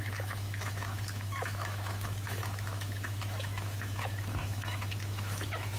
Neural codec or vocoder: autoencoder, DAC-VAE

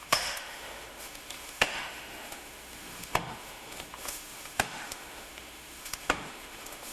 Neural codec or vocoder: autoencoder, DAC-VAE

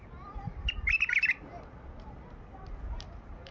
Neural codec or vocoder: none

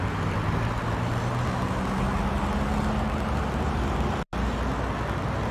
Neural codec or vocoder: none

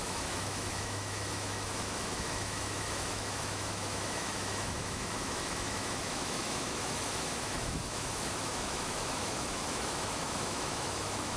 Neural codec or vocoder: autoencoder, DAC-VAE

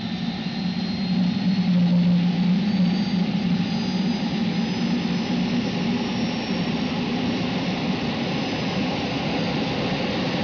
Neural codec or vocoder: none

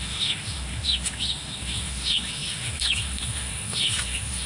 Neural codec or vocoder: autoencoder, DAC-VAE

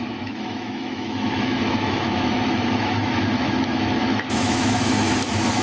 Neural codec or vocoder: autoencoder, DAC-VAE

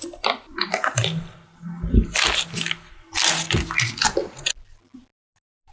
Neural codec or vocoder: none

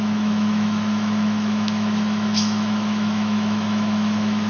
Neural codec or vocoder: autoencoder, DAC-VAE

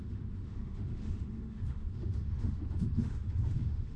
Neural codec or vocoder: autoencoder, DAC-VAE